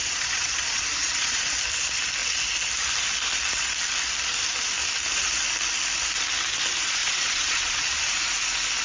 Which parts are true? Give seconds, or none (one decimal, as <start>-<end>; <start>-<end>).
1.6-7.0; 8.1-8.8